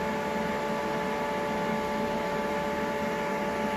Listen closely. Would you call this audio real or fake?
real